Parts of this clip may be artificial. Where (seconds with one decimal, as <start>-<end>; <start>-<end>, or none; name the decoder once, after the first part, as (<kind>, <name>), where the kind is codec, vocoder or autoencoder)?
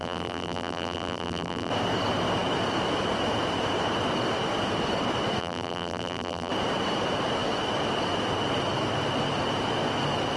0.0-1.7 (vocoder, BigVGAN v2); 5.4-6.5